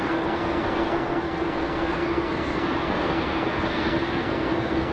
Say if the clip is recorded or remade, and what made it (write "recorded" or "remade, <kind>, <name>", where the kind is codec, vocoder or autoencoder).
remade, codec, SNAC